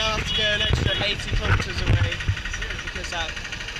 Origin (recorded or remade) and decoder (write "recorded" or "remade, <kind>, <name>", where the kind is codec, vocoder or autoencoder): recorded